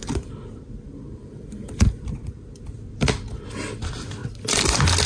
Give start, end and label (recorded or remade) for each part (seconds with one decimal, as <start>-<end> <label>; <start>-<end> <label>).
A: 0.0-4.2 remade; 4.2-5.1 recorded